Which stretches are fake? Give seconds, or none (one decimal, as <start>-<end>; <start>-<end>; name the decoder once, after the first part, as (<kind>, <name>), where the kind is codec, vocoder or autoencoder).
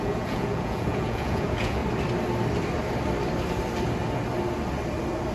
0.0-1.8 (vocoder, Vocos)